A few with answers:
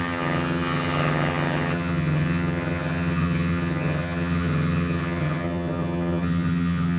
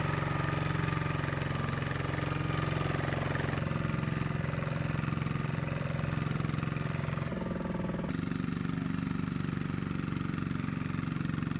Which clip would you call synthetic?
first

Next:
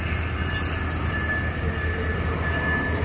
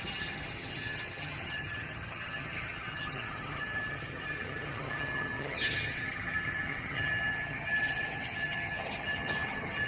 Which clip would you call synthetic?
second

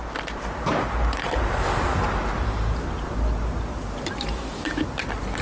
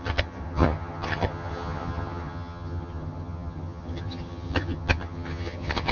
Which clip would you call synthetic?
second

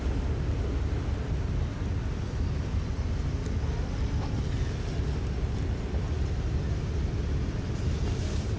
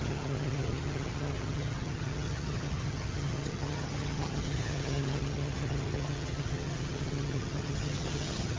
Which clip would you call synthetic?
second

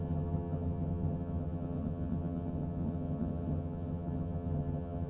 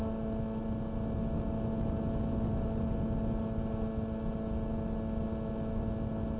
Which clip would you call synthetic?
first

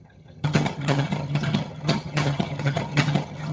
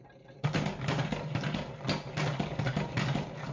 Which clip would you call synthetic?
first